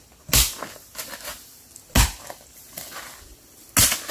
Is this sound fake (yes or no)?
no